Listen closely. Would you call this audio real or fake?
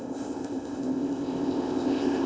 fake